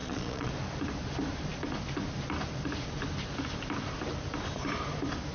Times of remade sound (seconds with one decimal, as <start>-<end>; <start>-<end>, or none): 0.0-0.5

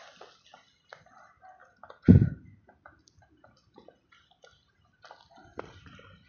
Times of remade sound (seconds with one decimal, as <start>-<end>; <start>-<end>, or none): none